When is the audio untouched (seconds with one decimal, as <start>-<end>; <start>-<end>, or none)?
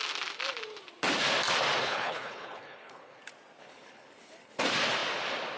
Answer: 0.0-1.8; 3.2-3.6; 4.6-5.6